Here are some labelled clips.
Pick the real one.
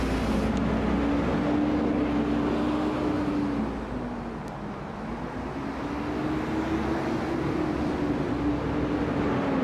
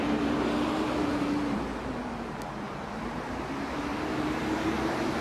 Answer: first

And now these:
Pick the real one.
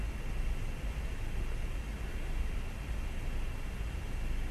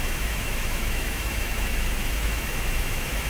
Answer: first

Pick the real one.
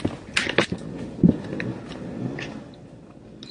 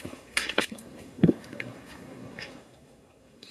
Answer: first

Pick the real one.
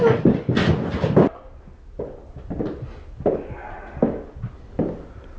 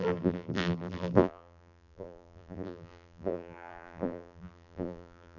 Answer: first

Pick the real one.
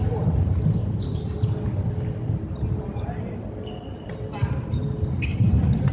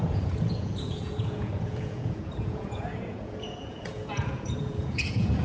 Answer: first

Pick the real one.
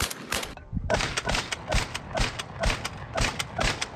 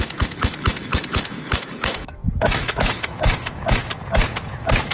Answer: first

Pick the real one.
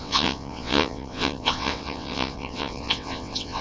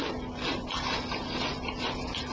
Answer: second